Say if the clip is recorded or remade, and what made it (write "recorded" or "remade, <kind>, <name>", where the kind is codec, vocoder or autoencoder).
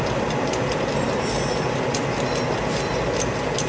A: recorded